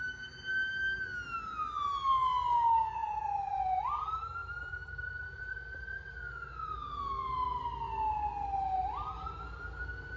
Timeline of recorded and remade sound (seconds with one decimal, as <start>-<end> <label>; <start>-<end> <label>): 0.0-3.0 recorded; 3.0-3.8 remade; 3.8-4.4 recorded; 4.4-5.4 remade; 5.4-10.2 recorded